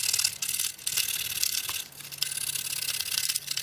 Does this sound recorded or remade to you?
recorded